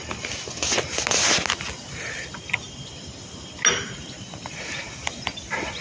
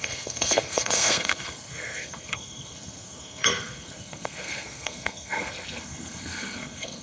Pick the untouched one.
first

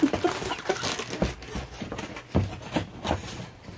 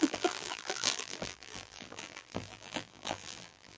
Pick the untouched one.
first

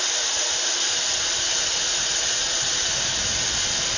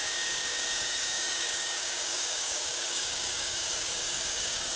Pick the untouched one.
first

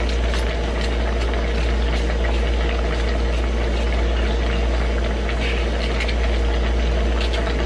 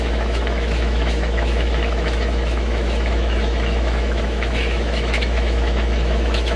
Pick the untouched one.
first